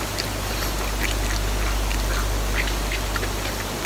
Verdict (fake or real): real